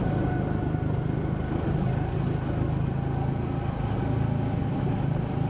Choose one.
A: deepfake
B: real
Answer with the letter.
B